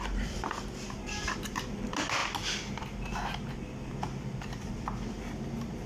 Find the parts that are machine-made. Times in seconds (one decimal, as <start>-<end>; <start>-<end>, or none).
none